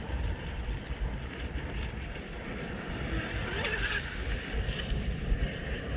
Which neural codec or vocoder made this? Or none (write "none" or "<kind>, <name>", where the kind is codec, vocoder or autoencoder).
none